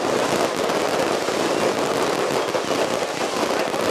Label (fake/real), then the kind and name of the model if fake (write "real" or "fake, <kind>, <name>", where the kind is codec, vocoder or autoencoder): real